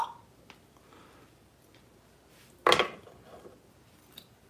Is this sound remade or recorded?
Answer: recorded